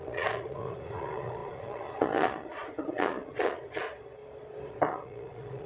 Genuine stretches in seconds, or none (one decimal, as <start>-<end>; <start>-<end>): 4.2-4.7